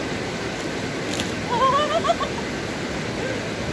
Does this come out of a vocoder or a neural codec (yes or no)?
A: no